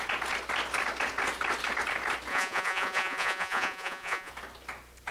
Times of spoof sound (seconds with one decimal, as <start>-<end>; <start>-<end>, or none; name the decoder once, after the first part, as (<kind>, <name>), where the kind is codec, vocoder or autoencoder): 2.3-4.3 (vocoder, Vocos)